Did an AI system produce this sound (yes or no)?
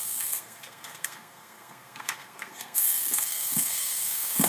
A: yes